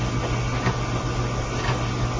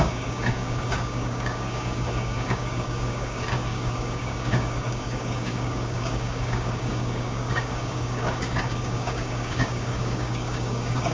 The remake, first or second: second